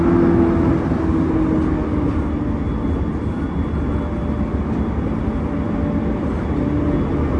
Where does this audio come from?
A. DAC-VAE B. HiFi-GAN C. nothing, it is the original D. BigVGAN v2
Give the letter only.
C